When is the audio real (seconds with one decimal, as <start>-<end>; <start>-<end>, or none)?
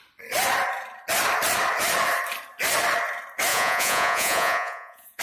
0.0-3.5